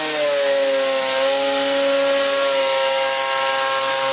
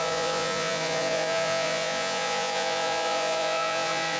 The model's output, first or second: second